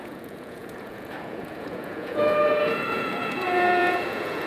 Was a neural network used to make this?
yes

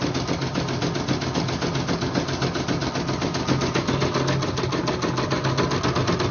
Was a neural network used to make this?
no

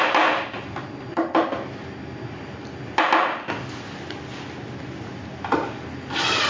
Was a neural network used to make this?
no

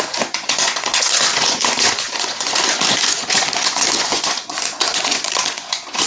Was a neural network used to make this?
yes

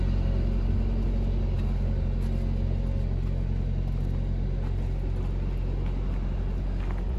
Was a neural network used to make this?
no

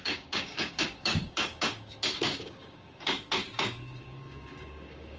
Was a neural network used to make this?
yes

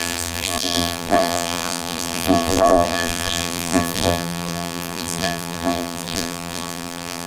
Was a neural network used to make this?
yes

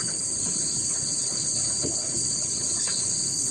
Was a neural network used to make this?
yes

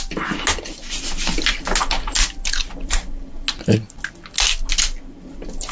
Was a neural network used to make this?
no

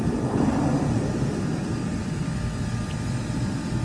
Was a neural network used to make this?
no